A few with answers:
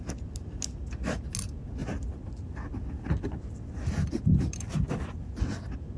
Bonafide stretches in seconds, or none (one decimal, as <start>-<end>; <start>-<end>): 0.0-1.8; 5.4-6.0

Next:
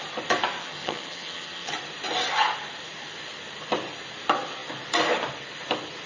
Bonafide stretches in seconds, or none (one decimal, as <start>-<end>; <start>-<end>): 0.0-0.6; 1.7-6.1

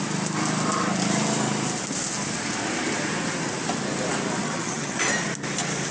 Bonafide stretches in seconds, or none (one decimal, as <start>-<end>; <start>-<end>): 0.0-4.4; 5.0-5.9

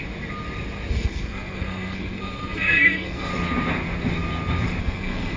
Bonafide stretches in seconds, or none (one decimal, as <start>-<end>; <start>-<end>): 0.0-0.9; 3.3-4.8

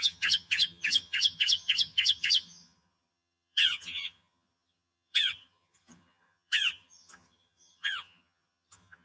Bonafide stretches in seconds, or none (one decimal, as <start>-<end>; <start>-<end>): none

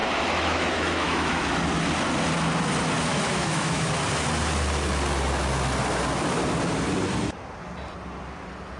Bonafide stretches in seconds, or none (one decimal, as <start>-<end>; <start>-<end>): 1.5-3.1; 3.9-8.8

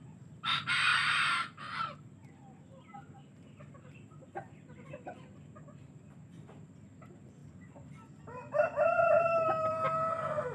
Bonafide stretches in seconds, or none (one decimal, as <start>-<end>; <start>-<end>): 7.4-9.7

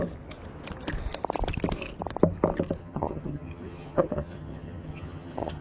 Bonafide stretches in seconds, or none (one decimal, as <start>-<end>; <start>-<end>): 0.0-2.8